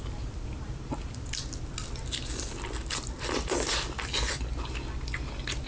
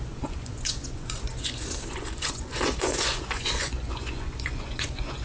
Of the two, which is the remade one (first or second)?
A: second